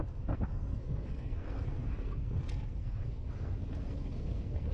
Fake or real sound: fake